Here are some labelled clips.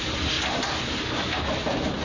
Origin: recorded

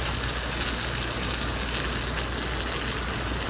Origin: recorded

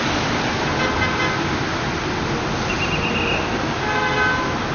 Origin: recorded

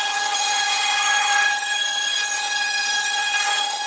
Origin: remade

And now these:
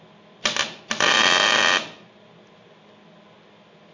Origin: recorded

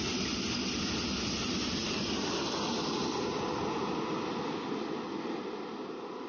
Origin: recorded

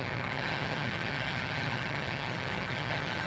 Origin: remade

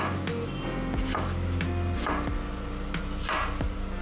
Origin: recorded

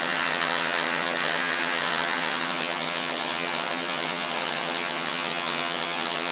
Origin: remade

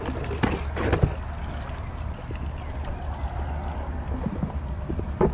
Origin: recorded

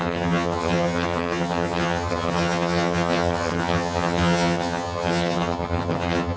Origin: remade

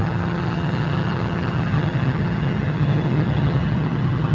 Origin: remade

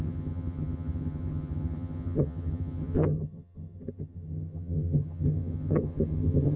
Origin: remade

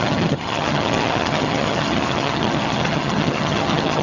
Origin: remade